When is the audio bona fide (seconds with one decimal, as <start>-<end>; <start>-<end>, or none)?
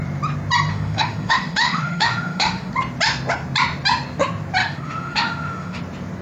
0.0-0.7; 2.7-4.6; 5.8-6.2